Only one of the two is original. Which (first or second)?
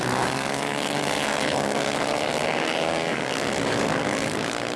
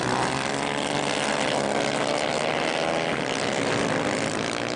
second